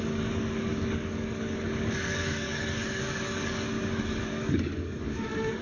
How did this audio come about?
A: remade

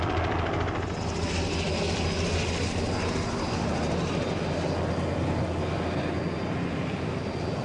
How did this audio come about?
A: recorded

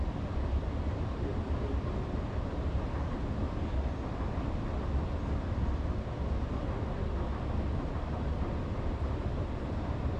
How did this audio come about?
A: recorded